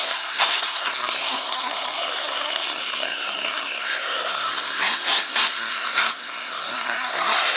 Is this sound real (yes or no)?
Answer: no